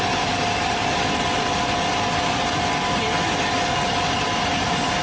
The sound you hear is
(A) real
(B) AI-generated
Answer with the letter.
A